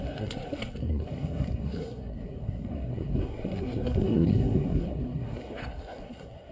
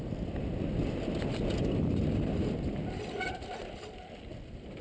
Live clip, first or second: second